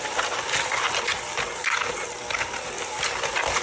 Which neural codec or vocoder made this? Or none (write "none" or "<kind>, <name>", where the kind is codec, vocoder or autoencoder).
none